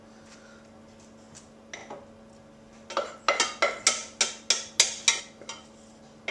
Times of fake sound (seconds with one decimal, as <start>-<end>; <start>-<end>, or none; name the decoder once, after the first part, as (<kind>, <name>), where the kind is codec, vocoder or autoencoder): none